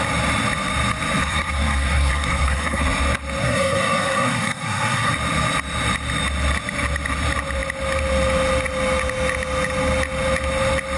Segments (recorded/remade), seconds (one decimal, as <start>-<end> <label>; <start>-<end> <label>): 0.0-1.2 recorded; 1.2-2.8 remade; 2.8-3.4 recorded; 3.4-5.1 remade; 5.1-11.0 recorded

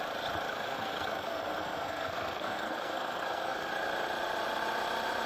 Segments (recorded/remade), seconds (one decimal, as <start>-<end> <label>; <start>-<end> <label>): 0.0-0.5 recorded; 0.5-3.7 remade; 3.7-5.3 recorded

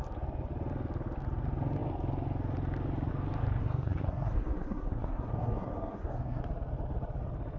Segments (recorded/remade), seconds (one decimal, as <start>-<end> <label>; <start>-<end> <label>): 0.0-3.6 recorded; 3.6-6.4 remade; 6.4-7.6 recorded

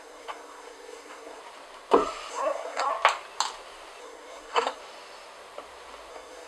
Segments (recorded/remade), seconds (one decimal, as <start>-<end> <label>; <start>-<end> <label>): 0.0-1.4 remade; 1.4-2.3 recorded; 2.3-2.9 remade; 2.9-4.0 recorded; 4.0-4.8 remade; 4.8-6.1 recorded; 6.1-6.5 remade